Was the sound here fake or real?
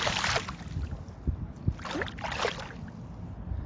real